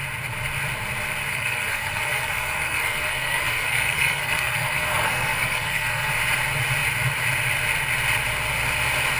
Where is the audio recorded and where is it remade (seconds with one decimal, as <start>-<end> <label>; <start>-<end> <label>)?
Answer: 0.0-1.3 recorded; 1.3-6.1 remade; 6.1-9.2 recorded